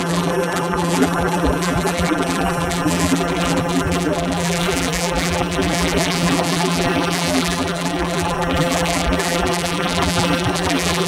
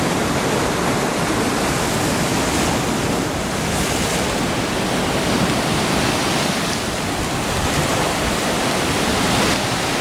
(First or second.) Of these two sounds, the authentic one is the second